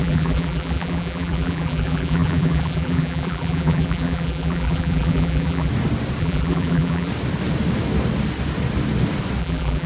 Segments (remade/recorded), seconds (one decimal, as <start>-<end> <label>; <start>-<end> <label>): 0.0-5.7 remade; 5.7-6.2 recorded; 6.2-7.1 remade; 7.1-9.4 recorded; 9.4-9.9 remade

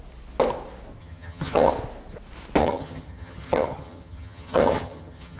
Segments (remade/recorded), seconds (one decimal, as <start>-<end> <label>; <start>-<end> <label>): 0.0-1.0 recorded; 1.0-1.7 remade; 1.7-2.6 recorded; 2.6-5.4 remade

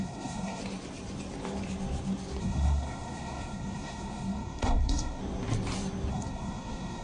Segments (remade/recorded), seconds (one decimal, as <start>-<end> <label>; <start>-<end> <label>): 0.0-0.6 remade; 0.6-2.4 recorded; 2.4-5.2 remade; 5.2-6.1 recorded; 6.1-7.0 remade

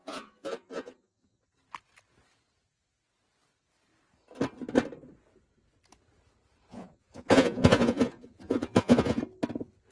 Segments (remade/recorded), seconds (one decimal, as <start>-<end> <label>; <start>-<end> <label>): 0.0-1.4 remade; 1.4-6.7 recorded; 6.7-9.2 remade; 9.2-9.9 recorded

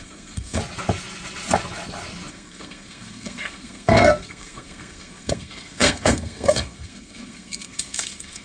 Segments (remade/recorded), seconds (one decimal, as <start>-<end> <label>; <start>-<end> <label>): 0.0-0.6 remade; 0.6-2.3 recorded; 2.3-8.4 remade

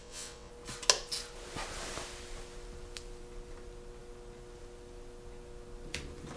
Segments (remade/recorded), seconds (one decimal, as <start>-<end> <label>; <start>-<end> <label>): 0.0-0.5 remade; 0.5-6.4 recorded

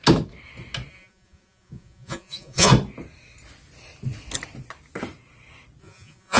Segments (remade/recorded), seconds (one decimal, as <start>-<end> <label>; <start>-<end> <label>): 0.0-0.9 recorded; 0.9-2.7 remade; 2.7-5.8 recorded; 5.8-6.4 remade

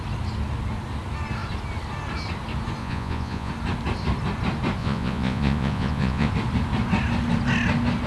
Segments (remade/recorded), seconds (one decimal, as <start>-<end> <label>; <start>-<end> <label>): 0.0-2.8 recorded; 2.8-3.5 remade; 3.5-4.8 recorded; 4.8-6.3 remade; 6.3-8.1 recorded